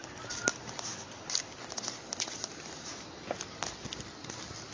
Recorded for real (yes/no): yes